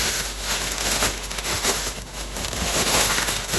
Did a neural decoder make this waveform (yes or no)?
yes